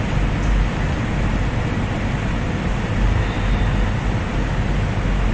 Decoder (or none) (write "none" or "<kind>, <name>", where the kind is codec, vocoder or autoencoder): none